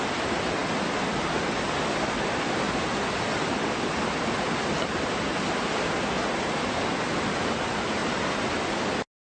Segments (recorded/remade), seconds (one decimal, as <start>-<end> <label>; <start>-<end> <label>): 0.0-9.2 recorded